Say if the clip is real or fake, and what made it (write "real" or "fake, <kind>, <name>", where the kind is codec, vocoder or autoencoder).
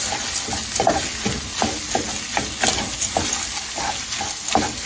real